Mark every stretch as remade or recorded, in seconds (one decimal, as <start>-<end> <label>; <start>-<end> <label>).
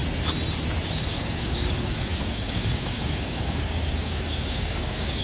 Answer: 0.0-0.9 recorded; 0.9-5.2 remade